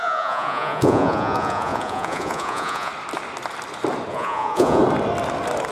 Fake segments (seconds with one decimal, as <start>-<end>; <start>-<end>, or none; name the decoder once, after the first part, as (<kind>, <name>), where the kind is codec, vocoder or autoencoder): 0.0-2.9 (vocoder, Vocos); 4.1-4.8